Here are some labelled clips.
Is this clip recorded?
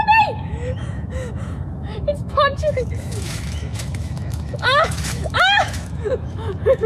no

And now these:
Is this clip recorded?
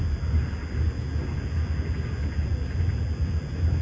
yes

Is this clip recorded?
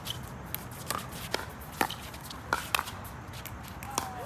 yes